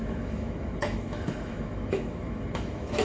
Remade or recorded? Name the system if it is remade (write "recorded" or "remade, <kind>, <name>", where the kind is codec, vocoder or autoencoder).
remade, autoencoder, DAC-VAE